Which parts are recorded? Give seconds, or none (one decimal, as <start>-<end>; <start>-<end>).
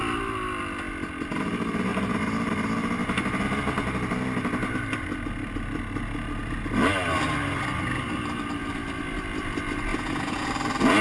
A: 0.0-9.9; 10.5-11.0